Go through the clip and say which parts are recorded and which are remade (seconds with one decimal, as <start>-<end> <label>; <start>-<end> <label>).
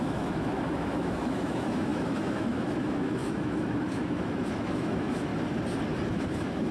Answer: 0.0-5.3 remade; 5.3-6.1 recorded; 6.1-6.7 remade